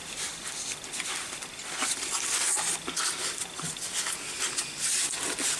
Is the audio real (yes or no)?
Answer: yes